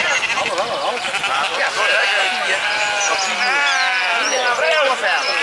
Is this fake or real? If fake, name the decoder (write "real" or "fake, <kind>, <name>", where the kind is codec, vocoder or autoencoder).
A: real